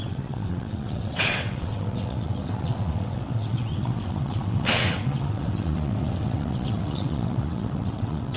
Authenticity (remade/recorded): remade